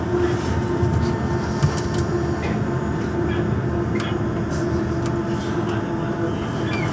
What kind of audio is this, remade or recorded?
recorded